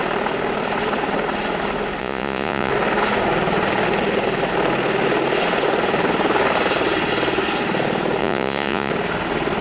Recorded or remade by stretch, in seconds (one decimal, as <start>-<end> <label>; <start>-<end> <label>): 0.0-2.0 recorded; 2.0-2.7 remade; 2.7-8.2 recorded; 8.2-8.9 remade; 8.9-9.6 recorded

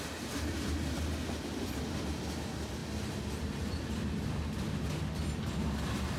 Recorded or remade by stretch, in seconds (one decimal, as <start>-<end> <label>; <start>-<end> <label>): 0.0-6.2 recorded

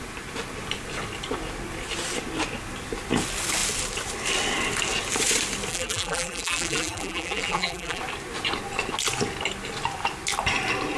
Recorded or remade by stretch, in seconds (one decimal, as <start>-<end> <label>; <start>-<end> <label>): 0.0-5.7 recorded; 5.7-8.0 remade; 8.0-11.0 recorded

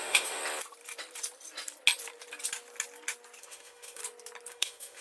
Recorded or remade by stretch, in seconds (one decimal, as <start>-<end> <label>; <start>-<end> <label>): 0.0-0.4 remade; 0.4-3.4 recorded; 3.4-4.0 remade; 4.0-4.5 recorded; 4.5-5.0 remade

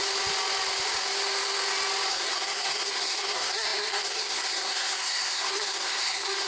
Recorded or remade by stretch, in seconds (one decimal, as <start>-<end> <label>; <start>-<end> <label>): 0.0-2.1 recorded; 2.1-6.5 remade

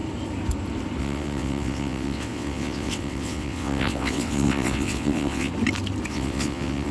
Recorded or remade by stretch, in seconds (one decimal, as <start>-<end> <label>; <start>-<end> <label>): 0.0-1.0 recorded; 1.0-5.5 remade; 5.5-6.1 recorded; 6.1-6.9 remade

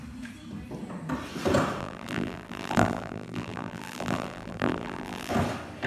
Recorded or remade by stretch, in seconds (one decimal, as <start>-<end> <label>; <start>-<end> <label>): 0.0-1.8 recorded; 1.8-5.3 remade; 5.3-5.9 recorded